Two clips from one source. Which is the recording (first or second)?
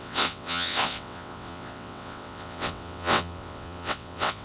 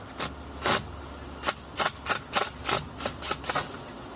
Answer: second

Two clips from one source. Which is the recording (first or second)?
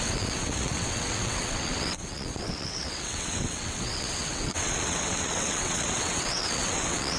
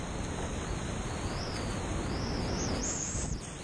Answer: second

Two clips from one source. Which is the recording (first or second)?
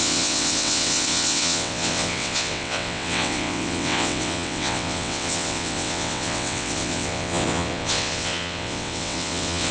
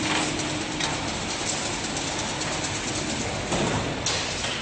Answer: second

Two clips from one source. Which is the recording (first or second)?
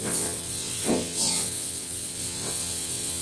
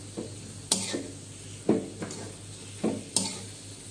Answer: second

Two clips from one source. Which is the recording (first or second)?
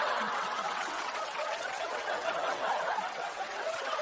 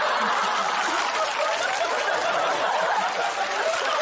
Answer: second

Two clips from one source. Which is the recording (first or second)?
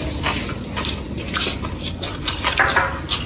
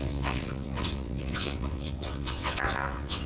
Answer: first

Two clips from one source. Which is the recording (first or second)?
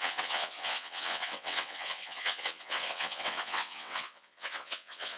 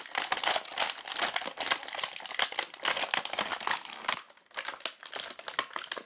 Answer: second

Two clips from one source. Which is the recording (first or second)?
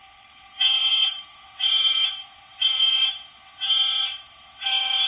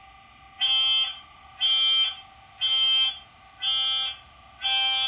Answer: second